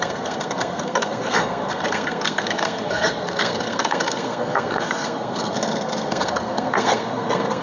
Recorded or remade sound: remade